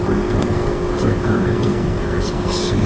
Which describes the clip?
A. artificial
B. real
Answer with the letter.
A